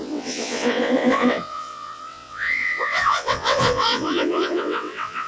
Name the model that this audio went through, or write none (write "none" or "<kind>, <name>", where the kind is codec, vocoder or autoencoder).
vocoder, WaveNeXt